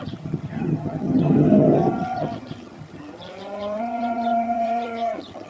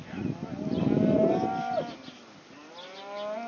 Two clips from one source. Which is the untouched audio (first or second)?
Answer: second